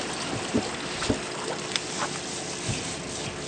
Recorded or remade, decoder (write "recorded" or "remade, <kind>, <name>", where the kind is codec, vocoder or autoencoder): recorded